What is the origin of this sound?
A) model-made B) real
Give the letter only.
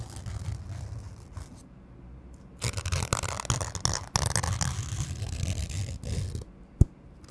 B